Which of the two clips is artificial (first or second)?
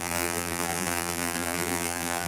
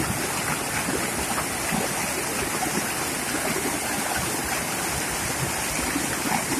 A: first